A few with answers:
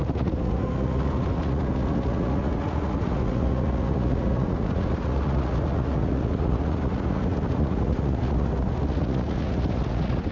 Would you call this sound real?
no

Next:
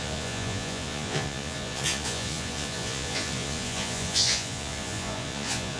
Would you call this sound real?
no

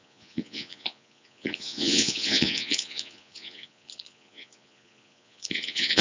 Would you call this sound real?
no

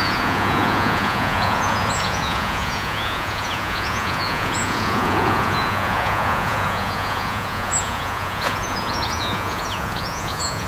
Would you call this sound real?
no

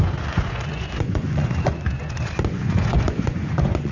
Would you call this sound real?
no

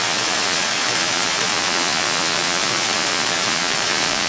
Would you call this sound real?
no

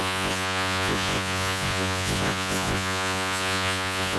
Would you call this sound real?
no